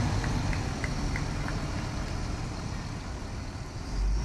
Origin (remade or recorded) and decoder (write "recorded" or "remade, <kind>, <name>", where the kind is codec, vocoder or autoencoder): recorded